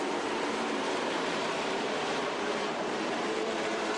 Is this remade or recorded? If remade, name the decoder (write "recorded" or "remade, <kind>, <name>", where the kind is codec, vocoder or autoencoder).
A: remade, vocoder, BigVGAN v2